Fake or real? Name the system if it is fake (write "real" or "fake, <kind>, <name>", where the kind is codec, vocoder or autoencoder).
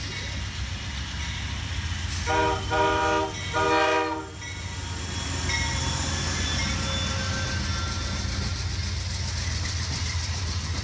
real